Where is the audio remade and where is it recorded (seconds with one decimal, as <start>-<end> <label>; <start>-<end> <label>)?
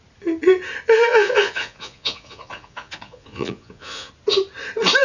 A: 0.0-1.1 recorded; 1.1-4.1 remade; 4.1-5.0 recorded